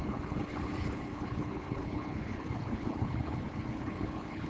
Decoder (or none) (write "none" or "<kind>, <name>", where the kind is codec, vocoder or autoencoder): codec, HILCodec